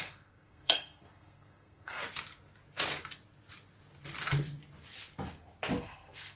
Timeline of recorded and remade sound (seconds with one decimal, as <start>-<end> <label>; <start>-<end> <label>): 0.0-2.0 remade; 2.0-5.8 recorded; 5.8-6.4 remade